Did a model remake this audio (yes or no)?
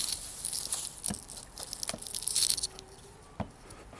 no